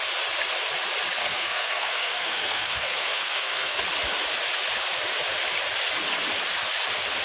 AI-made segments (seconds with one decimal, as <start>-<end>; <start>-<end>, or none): 1.2-3.8